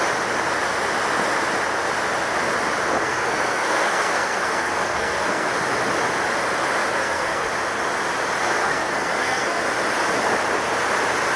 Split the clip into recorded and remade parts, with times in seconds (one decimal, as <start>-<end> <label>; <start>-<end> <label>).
0.0-3.0 recorded; 3.0-5.5 remade; 5.5-6.9 recorded; 6.9-7.5 remade; 7.5-8.6 recorded; 8.6-9.6 remade; 9.6-11.4 recorded